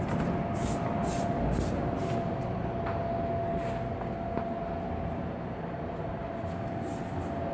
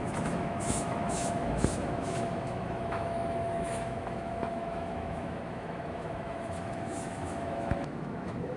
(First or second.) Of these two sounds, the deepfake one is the second